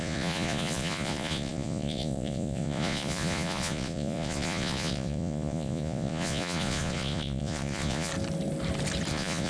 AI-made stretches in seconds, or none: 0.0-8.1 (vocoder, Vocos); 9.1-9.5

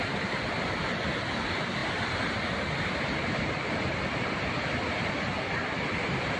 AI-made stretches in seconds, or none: 1.8-5.1 (vocoder, BigVGAN v2)